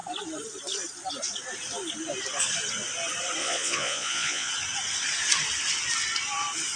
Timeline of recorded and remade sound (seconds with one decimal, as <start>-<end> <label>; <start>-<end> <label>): 0.0-3.4 recorded; 3.4-4.5 remade; 4.5-6.8 recorded